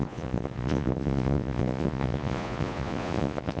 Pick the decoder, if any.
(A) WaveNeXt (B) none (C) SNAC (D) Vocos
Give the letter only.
D